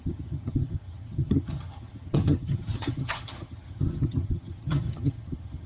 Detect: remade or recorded remade